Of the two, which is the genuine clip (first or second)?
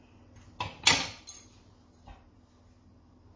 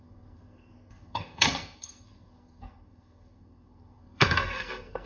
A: first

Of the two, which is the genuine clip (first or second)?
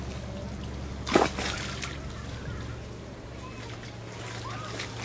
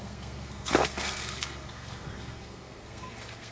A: first